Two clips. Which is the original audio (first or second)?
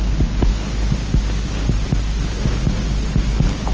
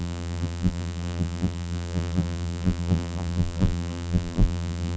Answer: first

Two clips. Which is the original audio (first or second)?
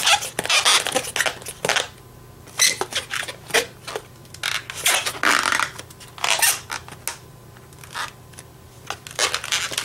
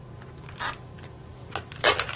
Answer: first